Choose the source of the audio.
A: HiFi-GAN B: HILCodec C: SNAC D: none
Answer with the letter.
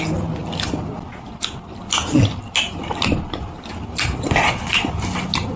D